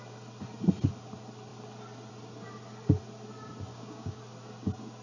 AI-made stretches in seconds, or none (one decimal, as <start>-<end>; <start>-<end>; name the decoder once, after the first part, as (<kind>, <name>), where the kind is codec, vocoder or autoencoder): 3.7-4.2 (codec, DAC)